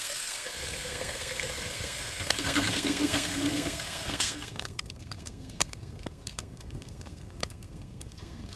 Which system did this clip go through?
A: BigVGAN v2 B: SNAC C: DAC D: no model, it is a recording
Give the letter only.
B